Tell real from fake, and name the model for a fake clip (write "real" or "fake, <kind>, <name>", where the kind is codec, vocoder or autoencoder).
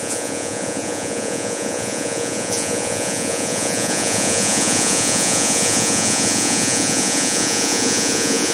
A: fake, vocoder, Vocos